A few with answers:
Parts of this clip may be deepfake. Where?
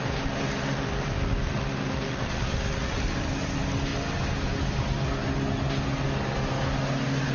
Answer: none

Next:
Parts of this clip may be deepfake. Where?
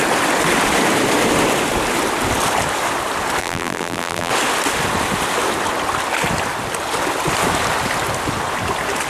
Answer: 3.4-4.3 (vocoder, BigVGAN v2)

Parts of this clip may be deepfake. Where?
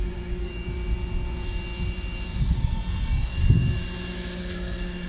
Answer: 0.0-0.5 (codec, SNAC); 2.4-3.4; 4.4-5.1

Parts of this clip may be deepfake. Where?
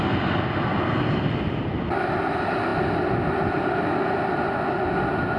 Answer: none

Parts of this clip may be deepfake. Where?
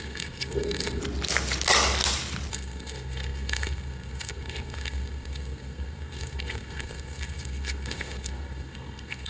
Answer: 0.0-1.0 (codec, SNAC); 2.5-9.3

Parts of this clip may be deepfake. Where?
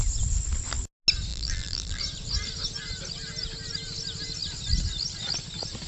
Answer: 1.3-2.0 (vocoder, BigVGAN v2)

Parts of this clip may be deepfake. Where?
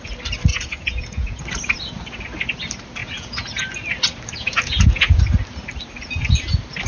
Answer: 0.5-1.4 (vocoder, Vocos); 3.0-3.6; 4.4-5.2